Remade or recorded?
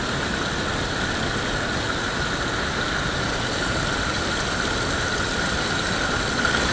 recorded